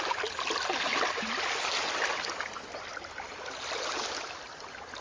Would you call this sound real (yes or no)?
yes